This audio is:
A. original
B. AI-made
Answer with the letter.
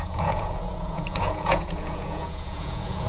B